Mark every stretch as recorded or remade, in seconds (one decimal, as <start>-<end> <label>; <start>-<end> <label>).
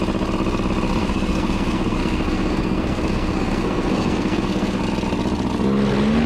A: 0.0-1.0 recorded; 1.0-4.8 remade; 4.8-6.3 recorded